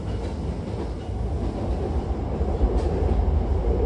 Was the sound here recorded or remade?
recorded